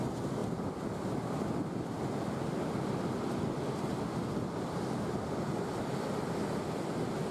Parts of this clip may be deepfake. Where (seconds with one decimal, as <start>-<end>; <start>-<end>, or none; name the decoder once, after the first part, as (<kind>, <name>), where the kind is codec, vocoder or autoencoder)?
none